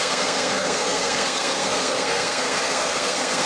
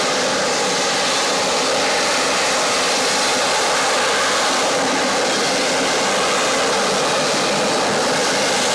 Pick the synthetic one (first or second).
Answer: first